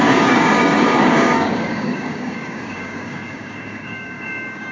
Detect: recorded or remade remade